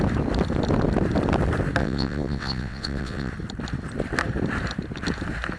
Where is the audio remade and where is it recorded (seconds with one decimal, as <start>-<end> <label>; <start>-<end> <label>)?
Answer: 0.0-1.8 recorded; 1.8-3.3 remade; 3.3-5.6 recorded